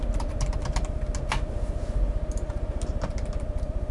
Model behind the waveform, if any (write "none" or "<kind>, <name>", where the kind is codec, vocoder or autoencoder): none